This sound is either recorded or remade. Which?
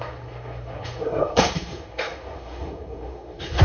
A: remade